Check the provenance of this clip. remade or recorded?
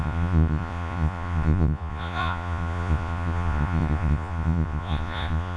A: remade